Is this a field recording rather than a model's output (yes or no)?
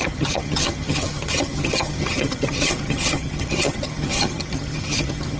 no